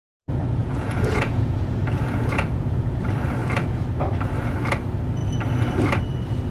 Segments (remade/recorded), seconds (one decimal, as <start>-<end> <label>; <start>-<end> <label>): 0.0-0.6 recorded; 0.6-3.0 remade; 3.0-3.4 recorded; 3.4-3.9 remade; 3.9-6.5 recorded